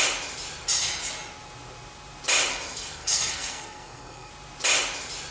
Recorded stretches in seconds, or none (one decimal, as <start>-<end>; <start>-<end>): 0.0-2.5; 4.3-5.3